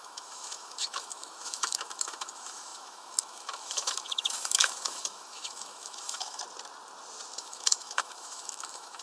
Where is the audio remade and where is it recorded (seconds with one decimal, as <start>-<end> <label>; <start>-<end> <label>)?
0.0-6.4 remade; 6.4-7.4 recorded; 7.4-9.0 remade